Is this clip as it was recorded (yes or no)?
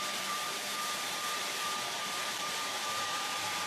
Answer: no